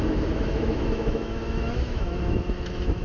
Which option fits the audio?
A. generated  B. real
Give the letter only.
A